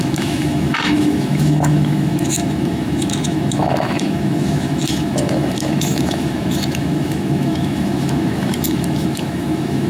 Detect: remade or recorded remade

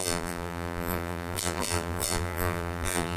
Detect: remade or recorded remade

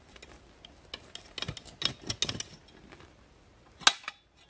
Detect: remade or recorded recorded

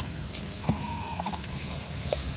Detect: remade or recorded remade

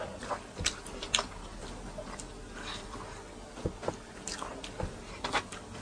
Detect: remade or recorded recorded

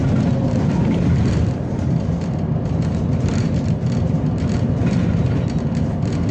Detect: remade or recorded recorded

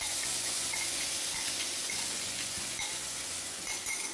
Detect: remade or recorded remade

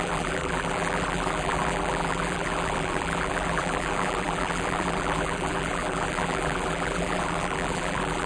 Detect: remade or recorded remade